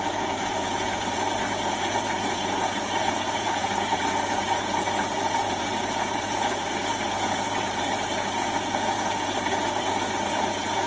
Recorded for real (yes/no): no